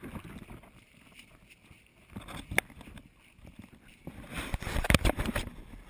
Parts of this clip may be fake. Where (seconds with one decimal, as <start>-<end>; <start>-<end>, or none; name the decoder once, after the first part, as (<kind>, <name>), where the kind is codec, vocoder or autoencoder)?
none